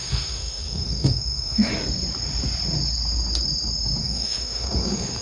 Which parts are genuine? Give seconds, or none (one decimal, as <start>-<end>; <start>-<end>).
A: 1.7-4.0